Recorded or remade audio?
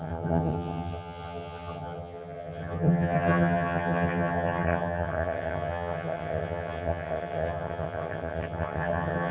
remade